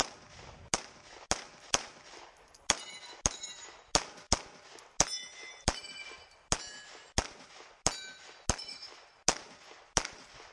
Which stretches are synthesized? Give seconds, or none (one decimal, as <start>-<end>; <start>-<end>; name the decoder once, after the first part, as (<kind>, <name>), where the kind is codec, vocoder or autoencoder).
none